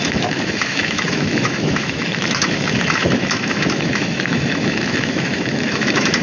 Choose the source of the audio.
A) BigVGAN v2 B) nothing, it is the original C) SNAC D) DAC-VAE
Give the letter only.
D